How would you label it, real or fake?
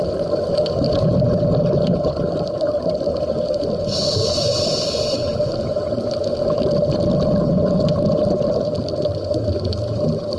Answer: real